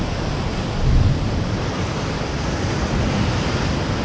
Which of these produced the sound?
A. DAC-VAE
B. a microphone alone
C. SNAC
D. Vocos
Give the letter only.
B